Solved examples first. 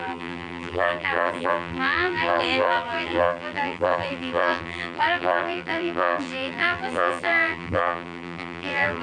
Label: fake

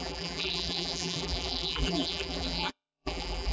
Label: fake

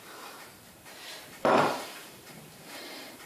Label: fake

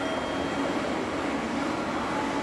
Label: real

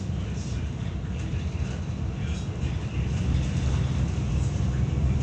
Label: fake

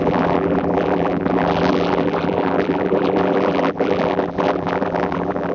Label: fake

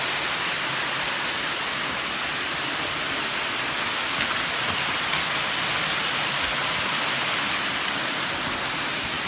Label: real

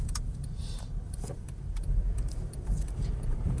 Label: fake